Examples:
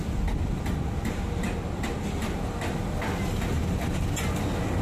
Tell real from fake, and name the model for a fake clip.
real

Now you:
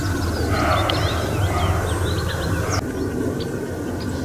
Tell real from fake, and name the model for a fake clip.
real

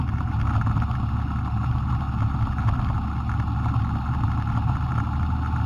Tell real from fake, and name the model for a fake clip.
real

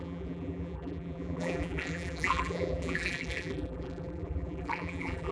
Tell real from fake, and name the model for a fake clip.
fake, vocoder, BigVGAN v2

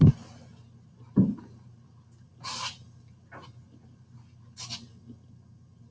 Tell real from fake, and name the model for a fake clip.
real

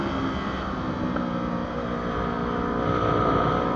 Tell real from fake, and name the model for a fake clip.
real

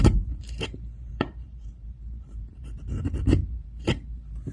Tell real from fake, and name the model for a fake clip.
fake, vocoder, BigVGAN v2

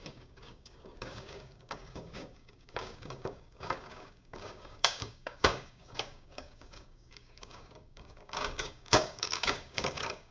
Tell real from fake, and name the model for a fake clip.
fake, codec, DAC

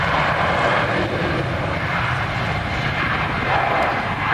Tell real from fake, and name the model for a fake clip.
real